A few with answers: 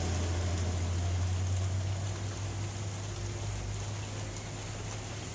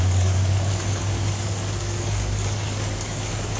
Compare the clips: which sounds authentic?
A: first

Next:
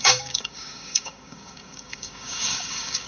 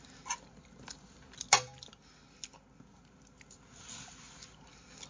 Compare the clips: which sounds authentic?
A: second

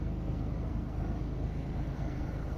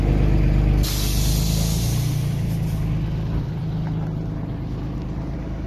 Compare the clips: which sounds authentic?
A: second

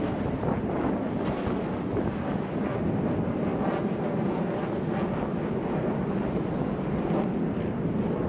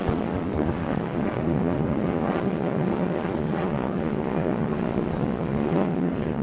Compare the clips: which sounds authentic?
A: first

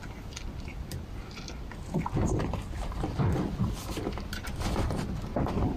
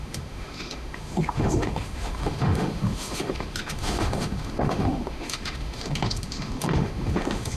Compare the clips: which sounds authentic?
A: first